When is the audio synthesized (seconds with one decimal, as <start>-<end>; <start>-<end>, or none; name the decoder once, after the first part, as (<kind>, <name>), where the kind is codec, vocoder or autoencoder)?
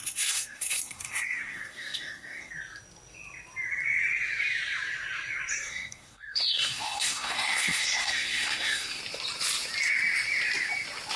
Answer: 0.0-2.5 (codec, SNAC); 5.5-9.0